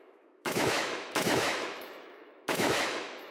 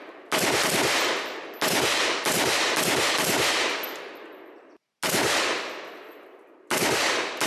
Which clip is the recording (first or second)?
second